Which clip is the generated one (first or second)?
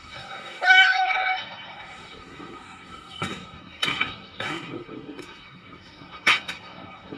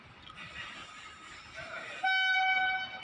first